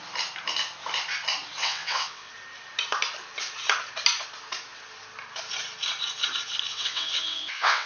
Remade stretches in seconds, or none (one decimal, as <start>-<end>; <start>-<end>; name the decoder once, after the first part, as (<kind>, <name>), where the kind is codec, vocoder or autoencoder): 1.6-2.3 (vocoder, WaveNeXt); 6.7-7.9